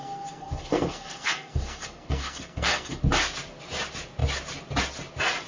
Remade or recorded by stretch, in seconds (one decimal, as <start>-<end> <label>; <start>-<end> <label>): 0.0-3.0 remade; 3.0-5.5 recorded